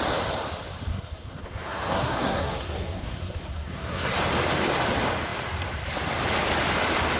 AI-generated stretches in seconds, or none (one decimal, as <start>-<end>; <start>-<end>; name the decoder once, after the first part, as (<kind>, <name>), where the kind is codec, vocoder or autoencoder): 0.9-4.1 (codec, SNAC)